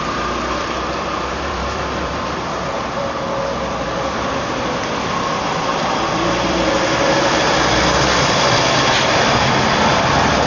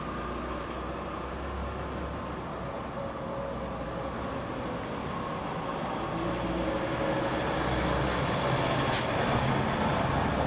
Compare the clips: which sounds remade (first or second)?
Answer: first